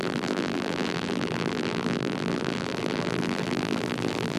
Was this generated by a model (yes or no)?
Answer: yes